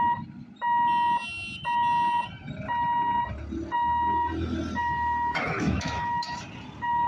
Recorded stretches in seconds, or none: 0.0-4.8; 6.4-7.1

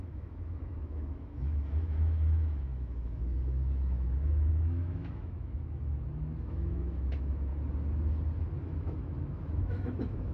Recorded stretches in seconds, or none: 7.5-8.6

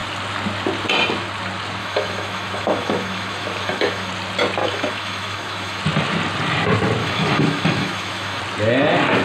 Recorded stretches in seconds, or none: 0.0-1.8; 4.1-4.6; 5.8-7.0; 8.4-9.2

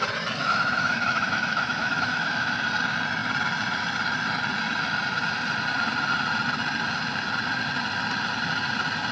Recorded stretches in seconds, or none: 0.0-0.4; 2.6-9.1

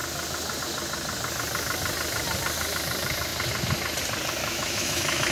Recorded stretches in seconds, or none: 0.0-4.4

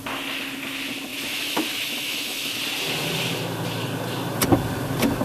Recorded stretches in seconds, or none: 0.0-1.1; 2.6-5.2

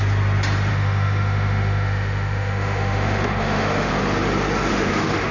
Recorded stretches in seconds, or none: 0.0-0.7; 3.9-4.7

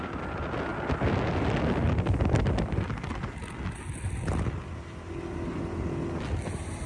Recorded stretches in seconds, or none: 0.0-6.9